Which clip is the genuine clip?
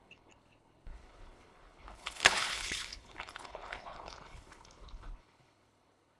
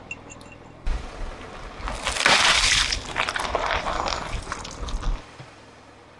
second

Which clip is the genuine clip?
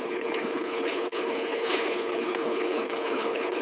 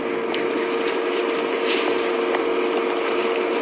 second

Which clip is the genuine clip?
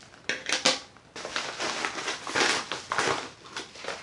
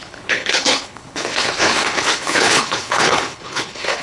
first